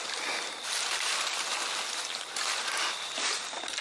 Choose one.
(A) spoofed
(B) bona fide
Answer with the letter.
B